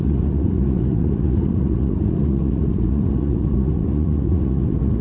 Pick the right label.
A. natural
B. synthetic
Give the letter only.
B